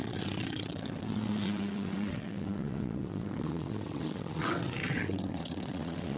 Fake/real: fake